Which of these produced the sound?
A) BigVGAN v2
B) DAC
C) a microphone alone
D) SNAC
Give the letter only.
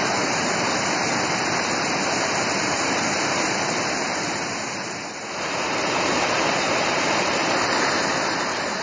A